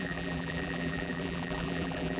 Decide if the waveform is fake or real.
fake